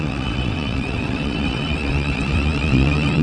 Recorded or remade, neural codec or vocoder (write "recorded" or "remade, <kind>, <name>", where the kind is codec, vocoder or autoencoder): remade, vocoder, WaveNeXt